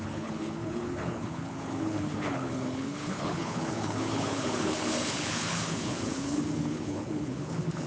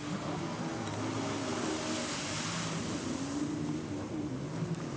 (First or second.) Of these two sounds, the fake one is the first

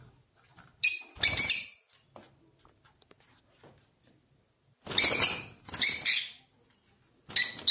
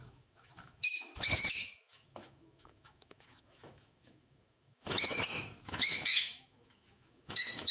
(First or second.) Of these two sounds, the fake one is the second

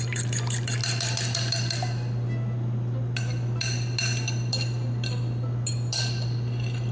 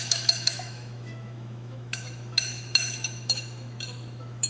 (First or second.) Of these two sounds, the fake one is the second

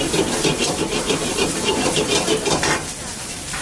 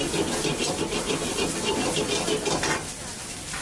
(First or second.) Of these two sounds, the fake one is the first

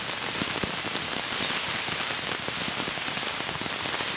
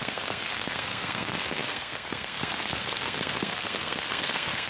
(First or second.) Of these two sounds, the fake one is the second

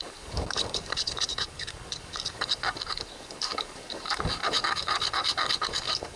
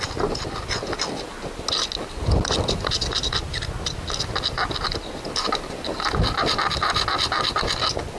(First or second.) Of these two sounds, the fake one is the first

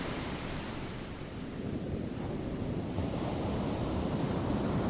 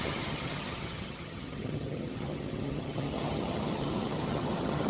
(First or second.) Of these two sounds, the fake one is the second